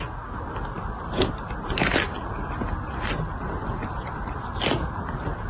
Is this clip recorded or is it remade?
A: recorded